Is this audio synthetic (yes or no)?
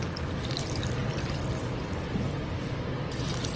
no